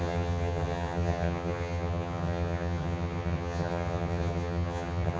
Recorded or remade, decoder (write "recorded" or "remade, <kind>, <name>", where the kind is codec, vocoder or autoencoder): remade, vocoder, HiFi-GAN